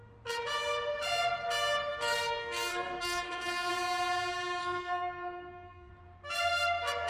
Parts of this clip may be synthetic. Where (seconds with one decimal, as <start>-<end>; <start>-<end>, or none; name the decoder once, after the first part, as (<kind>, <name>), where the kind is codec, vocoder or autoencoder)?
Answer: 1.9-3.7 (codec, SNAC); 4.6-5.9